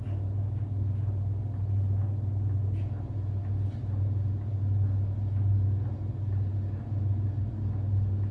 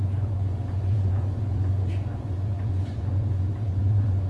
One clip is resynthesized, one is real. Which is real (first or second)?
first